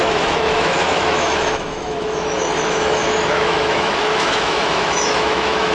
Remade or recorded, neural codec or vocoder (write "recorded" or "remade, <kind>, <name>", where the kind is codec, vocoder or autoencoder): remade, autoencoder, DAC-VAE